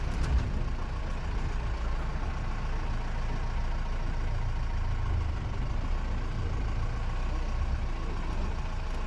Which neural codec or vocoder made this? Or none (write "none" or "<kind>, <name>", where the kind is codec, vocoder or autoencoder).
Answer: none